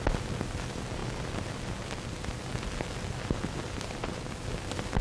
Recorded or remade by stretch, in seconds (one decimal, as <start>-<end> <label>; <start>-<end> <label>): 0.0-5.0 recorded